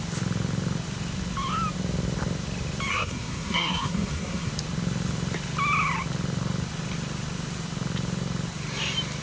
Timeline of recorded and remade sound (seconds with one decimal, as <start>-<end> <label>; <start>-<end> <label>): 0.0-2.9 recorded; 2.9-4.5 remade; 4.5-9.2 recorded